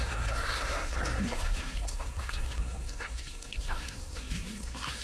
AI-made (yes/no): yes